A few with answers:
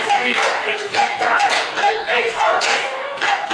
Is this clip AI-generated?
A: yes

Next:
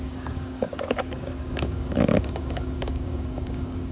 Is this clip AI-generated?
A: yes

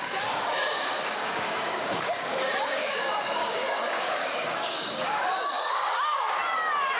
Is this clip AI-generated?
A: yes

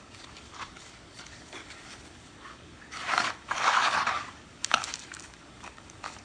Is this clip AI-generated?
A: yes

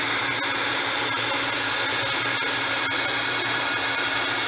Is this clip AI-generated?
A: no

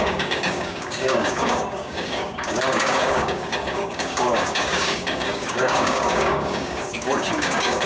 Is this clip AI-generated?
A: yes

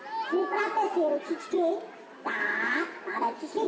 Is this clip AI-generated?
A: no